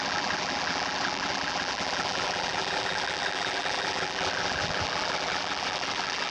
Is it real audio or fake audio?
fake